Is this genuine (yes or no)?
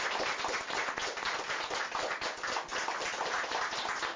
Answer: yes